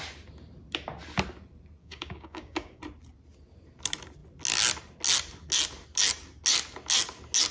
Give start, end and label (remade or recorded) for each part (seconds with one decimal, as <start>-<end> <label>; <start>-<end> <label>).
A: 0.0-1.8 recorded; 1.8-2.8 remade; 2.8-7.5 recorded